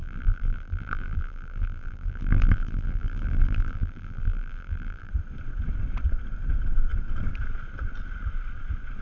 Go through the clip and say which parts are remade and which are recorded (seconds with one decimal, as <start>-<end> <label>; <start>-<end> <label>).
0.0-5.1 remade; 5.1-9.0 recorded